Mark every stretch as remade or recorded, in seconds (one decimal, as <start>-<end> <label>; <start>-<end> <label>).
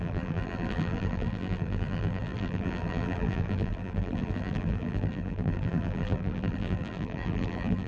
0.0-7.9 remade